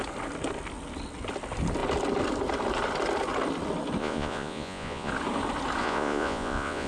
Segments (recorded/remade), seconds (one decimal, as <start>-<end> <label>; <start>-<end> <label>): 0.0-4.0 recorded; 4.0-5.1 remade; 5.1-5.8 recorded; 5.8-6.9 remade